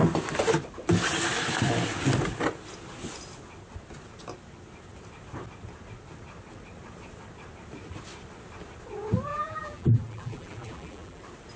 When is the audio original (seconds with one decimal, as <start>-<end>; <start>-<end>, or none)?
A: 0.0-9.3; 11.2-11.6